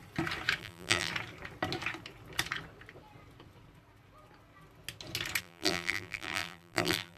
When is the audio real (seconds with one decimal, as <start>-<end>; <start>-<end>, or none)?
0.0-0.6; 1.1-5.4